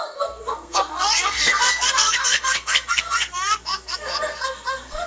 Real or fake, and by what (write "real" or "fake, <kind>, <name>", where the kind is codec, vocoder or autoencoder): fake, codec, SNAC